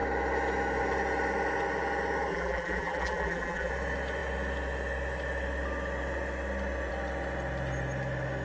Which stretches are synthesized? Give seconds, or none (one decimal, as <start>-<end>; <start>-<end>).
2.3-3.7